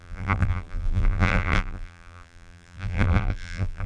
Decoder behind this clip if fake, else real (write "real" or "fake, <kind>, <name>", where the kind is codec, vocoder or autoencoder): fake, vocoder, BigVGAN v2